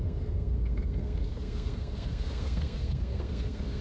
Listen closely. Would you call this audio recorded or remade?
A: remade